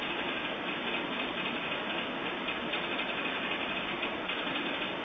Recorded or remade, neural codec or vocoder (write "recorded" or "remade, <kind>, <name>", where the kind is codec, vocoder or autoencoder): recorded